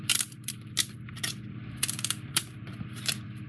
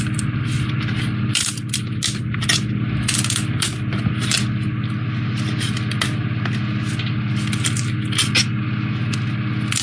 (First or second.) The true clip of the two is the second